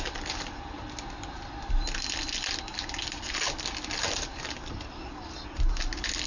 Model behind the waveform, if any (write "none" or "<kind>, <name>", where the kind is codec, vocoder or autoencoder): none